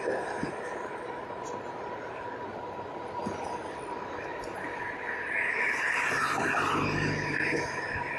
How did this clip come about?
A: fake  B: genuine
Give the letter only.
B